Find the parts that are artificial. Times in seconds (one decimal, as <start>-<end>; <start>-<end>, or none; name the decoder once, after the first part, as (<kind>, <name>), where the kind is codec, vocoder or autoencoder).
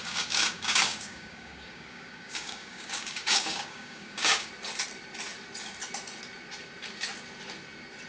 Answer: 0.0-4.5 (codec, DAC)